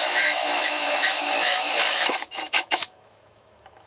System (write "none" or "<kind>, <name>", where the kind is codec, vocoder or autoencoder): autoencoder, DAC-VAE